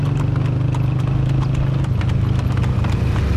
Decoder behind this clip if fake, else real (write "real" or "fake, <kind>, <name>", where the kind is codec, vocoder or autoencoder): real